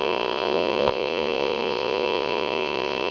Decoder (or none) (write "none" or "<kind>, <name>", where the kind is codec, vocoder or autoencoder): vocoder, Vocos